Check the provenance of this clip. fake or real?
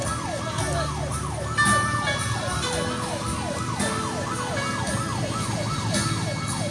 real